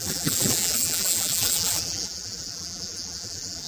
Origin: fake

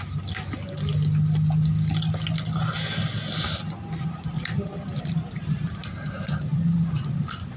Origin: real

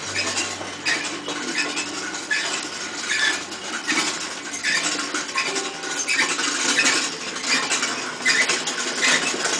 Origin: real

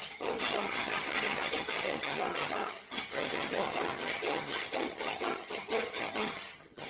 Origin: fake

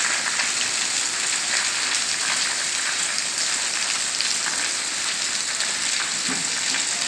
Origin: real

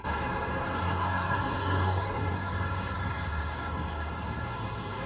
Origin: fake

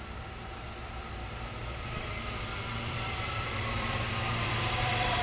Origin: fake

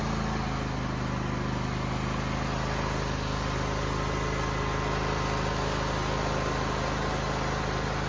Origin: real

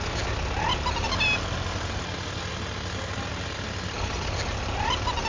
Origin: real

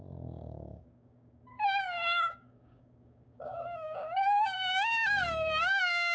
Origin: fake